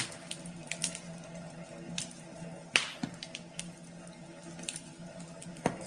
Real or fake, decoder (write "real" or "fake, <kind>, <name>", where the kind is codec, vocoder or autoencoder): real